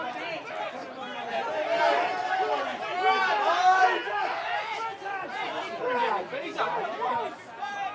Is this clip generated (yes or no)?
no